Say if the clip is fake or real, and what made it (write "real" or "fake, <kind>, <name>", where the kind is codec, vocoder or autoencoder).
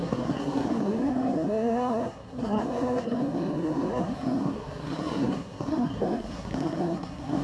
fake, codec, SNAC